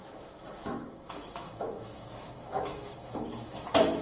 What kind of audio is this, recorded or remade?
remade